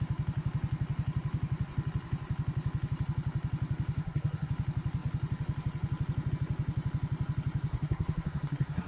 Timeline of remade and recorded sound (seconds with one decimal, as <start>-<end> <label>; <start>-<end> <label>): 0.0-4.0 recorded; 4.0-4.5 remade; 4.5-7.7 recorded; 7.7-8.9 remade